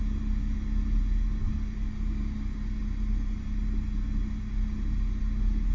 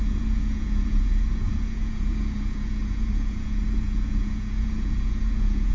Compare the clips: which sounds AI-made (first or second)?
second